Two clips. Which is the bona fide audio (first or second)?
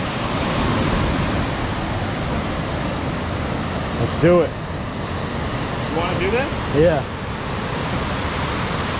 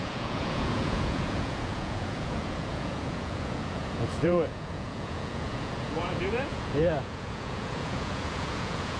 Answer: first